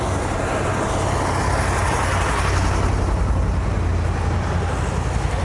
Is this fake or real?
real